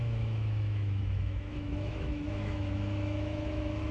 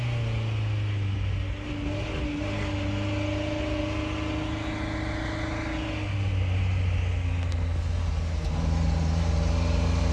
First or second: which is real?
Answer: second